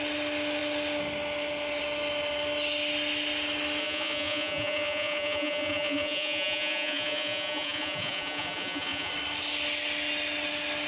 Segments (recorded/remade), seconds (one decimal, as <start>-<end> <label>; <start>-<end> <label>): 0.0-3.8 recorded; 3.8-9.1 remade; 9.1-10.9 recorded